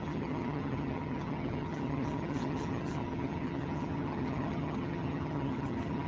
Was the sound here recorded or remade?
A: remade